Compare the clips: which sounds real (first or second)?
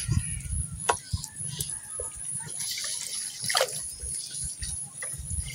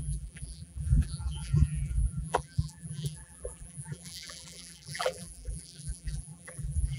first